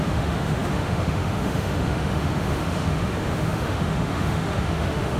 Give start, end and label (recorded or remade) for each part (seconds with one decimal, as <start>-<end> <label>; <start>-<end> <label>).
0.0-5.2 remade